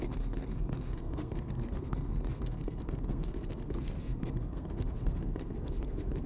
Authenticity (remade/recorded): remade